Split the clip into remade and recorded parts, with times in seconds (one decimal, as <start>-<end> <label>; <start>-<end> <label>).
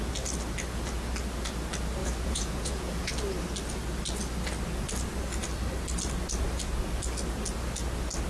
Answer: 0.0-2.0 recorded; 2.0-3.1 remade; 3.1-8.3 recorded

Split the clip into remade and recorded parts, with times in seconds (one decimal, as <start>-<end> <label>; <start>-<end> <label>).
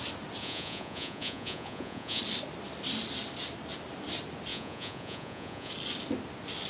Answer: 0.0-0.4 recorded; 0.4-2.2 remade; 2.2-4.5 recorded; 4.5-5.7 remade; 5.7-6.7 recorded